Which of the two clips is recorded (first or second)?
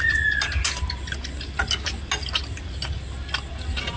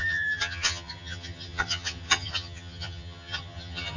first